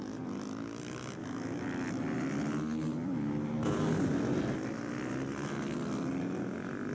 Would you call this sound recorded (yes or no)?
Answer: yes